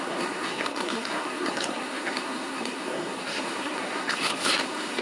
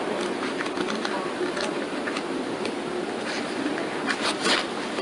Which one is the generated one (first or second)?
first